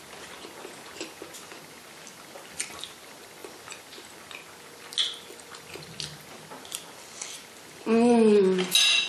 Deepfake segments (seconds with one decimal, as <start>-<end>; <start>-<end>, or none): none